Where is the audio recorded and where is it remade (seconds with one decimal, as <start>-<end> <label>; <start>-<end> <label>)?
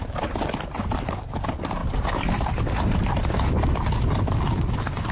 0.0-1.8 remade; 1.8-4.1 recorded; 4.1-5.1 remade